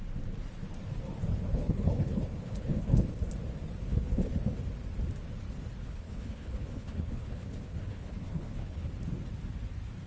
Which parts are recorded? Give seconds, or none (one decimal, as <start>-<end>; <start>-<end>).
0.0-1.3; 3.3-3.8; 4.4-5.8; 8.9-10.1